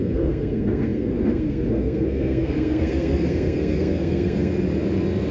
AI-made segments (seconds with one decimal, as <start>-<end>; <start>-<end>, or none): 0.0-4.5